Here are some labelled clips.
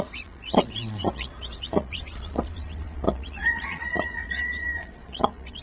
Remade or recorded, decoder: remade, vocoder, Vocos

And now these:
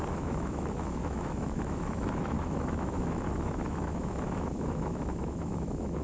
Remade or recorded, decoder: remade, autoencoder, DAC-VAE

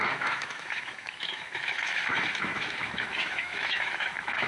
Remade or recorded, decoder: remade, autoencoder, DAC-VAE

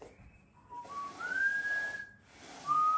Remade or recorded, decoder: recorded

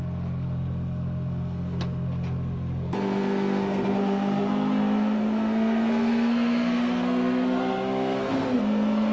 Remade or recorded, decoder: remade, codec, SNAC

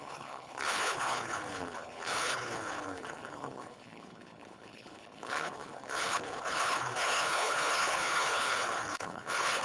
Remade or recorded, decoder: remade, codec, HILCodec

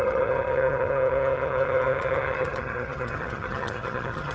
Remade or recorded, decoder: remade, vocoder, HiFi-GAN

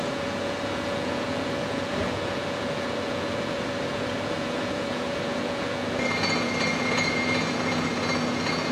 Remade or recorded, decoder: remade, vocoder, Vocos